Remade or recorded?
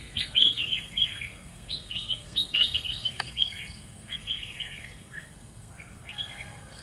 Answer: remade